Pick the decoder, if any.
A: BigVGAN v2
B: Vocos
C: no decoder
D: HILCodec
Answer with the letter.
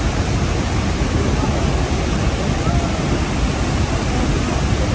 C